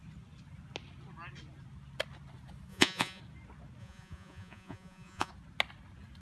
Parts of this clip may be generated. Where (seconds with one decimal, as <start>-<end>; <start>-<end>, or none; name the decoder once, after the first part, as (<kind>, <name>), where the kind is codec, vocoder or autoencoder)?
2.7-3.2 (vocoder, Vocos); 3.8-5.3